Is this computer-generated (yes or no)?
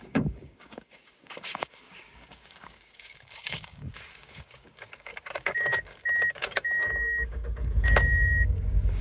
yes